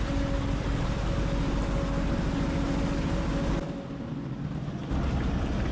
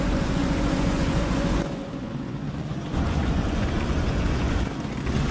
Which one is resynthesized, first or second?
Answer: second